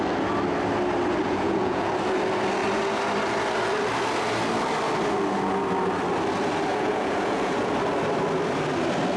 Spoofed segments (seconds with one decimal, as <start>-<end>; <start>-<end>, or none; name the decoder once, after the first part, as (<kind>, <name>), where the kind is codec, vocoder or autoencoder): 1.2-1.9 (vocoder, Vocos); 6.7-7.7